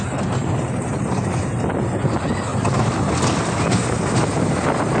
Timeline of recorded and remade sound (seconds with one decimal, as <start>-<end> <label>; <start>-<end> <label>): 0.0-5.0 recorded

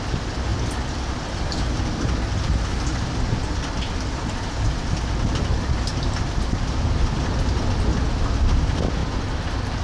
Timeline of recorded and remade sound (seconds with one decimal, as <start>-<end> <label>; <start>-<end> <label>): 0.0-9.8 recorded

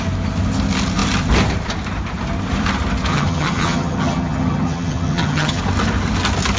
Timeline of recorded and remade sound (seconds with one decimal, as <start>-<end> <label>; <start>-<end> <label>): 0.0-3.1 recorded; 3.1-5.6 remade; 5.6-6.6 recorded

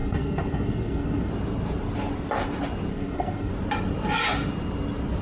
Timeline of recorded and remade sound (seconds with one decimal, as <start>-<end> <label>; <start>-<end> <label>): 0.0-1.3 remade; 1.3-2.9 recorded; 2.9-3.5 remade; 3.5-5.2 recorded

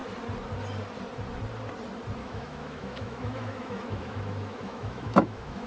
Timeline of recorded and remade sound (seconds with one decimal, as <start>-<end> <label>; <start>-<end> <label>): 0.0-2.2 recorded; 2.2-5.7 remade